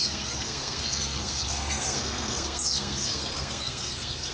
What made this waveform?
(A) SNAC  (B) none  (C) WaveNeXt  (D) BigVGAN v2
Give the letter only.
A